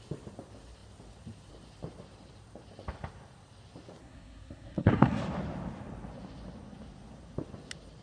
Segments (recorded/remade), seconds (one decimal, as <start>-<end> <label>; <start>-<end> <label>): 0.0-4.0 recorded; 4.0-5.2 remade; 5.2-8.0 recorded